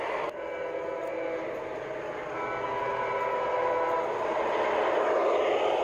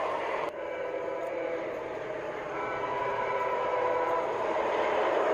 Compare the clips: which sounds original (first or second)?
first